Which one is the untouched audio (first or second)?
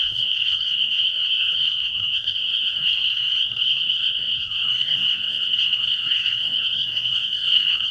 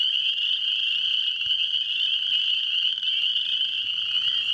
second